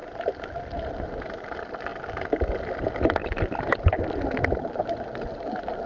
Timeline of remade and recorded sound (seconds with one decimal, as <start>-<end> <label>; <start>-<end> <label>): 0.0-5.9 recorded